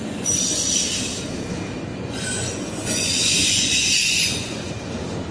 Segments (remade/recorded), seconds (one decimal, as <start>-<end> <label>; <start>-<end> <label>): 0.0-0.7 remade; 0.7-1.9 recorded; 1.9-4.7 remade; 4.7-5.3 recorded